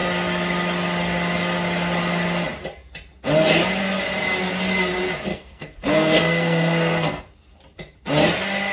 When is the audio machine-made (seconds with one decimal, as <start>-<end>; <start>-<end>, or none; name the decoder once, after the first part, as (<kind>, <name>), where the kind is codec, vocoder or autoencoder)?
5.3-7.2 (codec, SNAC)